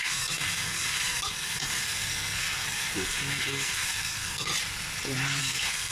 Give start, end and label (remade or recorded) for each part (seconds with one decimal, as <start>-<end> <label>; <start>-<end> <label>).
0.0-4.5 remade; 4.5-5.4 recorded; 5.4-5.9 remade